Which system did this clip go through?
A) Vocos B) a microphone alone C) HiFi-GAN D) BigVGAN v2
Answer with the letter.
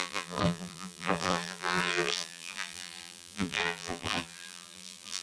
D